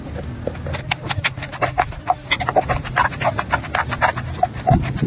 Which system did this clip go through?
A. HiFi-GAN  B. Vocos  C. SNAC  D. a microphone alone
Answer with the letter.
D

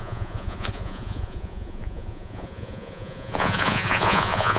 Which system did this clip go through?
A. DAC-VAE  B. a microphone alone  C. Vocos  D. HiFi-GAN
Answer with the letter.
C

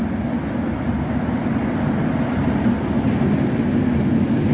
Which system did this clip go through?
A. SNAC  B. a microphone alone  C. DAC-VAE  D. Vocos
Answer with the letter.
B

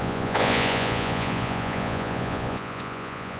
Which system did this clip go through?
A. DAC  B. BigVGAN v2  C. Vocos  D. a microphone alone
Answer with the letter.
C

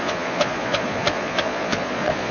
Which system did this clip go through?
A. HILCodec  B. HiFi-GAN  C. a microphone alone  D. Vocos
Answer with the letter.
D